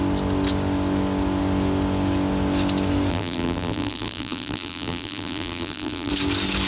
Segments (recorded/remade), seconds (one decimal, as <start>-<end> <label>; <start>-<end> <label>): 0.0-3.1 recorded; 3.1-6.1 remade; 6.1-6.7 recorded